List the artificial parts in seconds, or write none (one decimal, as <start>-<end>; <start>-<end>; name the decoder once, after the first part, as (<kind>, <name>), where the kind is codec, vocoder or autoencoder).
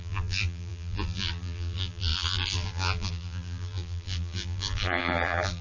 0.0-5.6 (vocoder, BigVGAN v2)